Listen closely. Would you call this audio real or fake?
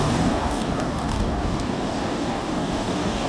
fake